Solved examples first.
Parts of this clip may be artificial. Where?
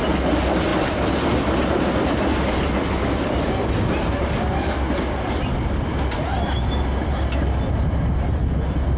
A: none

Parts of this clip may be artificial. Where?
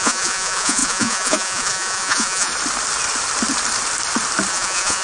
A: 0.0-2.5 (vocoder, Vocos); 4.5-5.0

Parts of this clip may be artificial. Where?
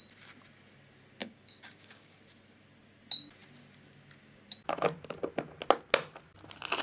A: 1.2-2.2 (codec, DAC)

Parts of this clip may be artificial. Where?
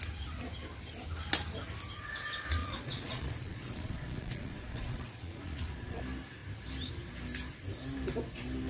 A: 2.6-6.0 (vocoder, Vocos)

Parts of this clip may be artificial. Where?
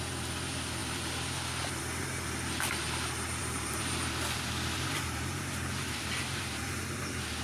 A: 0.8-1.8 (vocoder, BigVGAN v2); 3.4-6.8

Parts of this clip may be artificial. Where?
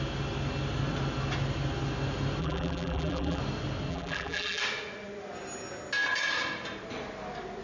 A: 2.4-3.4 (vocoder, BigVGAN v2); 3.9-4.6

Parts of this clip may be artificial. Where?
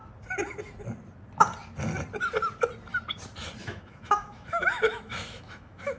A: 3.6-6.0 (autoencoder, DAC-VAE)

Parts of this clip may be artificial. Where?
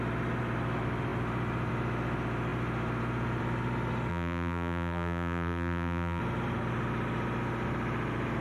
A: 4.1-6.2 (vocoder, BigVGAN v2)